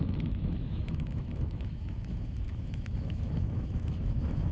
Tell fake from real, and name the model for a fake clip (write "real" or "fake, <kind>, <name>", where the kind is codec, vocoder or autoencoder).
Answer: fake, autoencoder, DAC-VAE